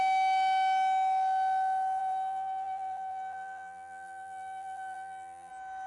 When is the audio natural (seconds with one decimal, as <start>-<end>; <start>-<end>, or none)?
0.0-2.0; 5.5-5.9